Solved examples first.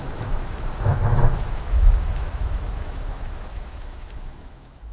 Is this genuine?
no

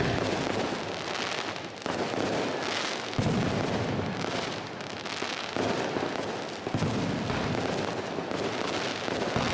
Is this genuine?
yes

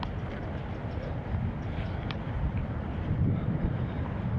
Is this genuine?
yes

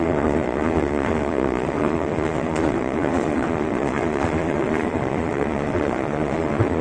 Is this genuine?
no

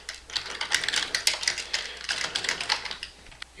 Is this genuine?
yes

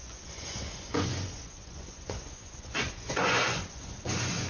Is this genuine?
no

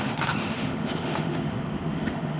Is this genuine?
no